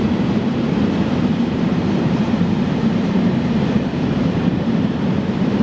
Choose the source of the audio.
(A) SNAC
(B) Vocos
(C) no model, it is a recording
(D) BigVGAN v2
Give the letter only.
D